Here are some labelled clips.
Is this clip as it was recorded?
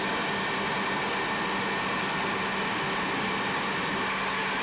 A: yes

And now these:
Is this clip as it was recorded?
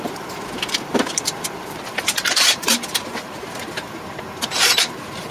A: no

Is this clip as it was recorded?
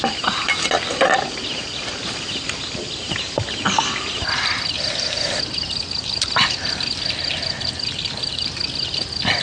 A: yes